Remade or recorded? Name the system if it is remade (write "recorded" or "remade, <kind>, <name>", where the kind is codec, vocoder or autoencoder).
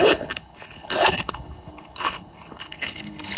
remade, codec, HILCodec